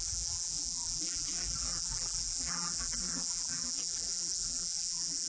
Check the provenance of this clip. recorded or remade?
remade